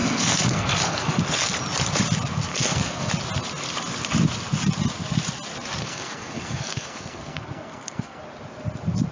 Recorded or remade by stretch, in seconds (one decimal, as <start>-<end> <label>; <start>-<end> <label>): 0.0-1.2 remade; 1.2-2.5 recorded; 2.5-3.1 remade; 3.1-5.8 recorded; 5.8-8.2 remade; 8.2-9.1 recorded